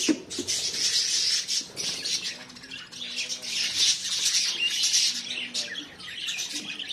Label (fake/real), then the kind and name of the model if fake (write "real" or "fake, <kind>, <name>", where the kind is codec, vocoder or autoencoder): real